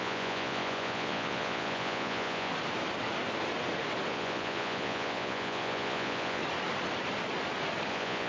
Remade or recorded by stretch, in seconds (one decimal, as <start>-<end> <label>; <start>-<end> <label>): 0.0-2.5 remade; 2.5-4.1 recorded; 4.1-6.4 remade; 6.4-7.9 recorded; 7.9-8.3 remade

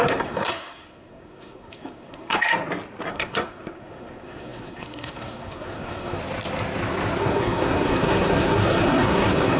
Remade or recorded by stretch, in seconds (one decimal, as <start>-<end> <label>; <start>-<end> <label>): 0.0-2.5 remade; 2.5-3.1 recorded; 3.1-6.2 remade; 6.2-7.2 recorded; 7.2-9.6 remade

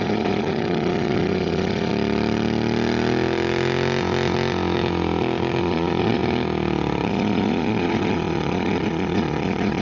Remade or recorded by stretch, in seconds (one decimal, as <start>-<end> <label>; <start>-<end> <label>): 0.0-1.9 remade; 1.9-5.6 recorded; 5.6-6.2 remade; 6.2-7.1 recorded; 7.1-9.8 remade

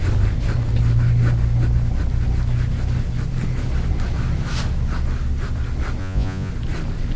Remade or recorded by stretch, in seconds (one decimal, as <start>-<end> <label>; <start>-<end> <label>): 0.0-6.0 recorded; 6.0-6.5 remade; 6.5-7.2 recorded

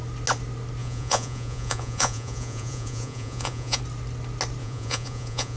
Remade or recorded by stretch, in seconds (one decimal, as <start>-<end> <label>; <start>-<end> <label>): 0.0-0.8 recorded; 0.8-3.8 remade; 3.8-4.6 recorded; 4.6-5.6 remade

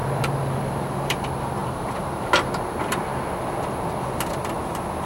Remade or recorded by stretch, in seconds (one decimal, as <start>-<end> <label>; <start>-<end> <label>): 0.0-1.2 remade; 1.2-1.6 recorded; 1.6-2.3 remade; 2.3-5.1 recorded

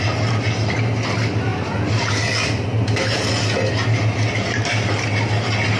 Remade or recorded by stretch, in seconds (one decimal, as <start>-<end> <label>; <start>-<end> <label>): 0.0-5.8 recorded

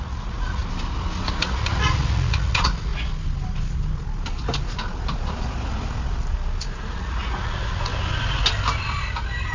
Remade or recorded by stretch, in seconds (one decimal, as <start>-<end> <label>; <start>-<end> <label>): 0.0-0.6 remade; 0.6-1.4 recorded; 1.4-2.9 remade; 2.9-6.9 recorded; 6.9-7.9 remade; 7.9-9.5 recorded